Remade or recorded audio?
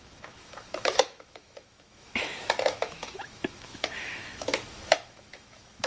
remade